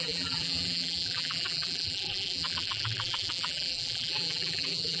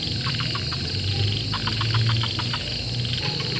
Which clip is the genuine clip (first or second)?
second